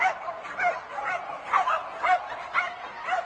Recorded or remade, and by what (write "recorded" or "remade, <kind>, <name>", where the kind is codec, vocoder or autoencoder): recorded